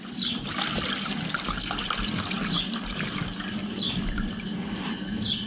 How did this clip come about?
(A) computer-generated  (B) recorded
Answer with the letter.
B